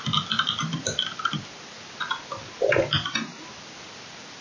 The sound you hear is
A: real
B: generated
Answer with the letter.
A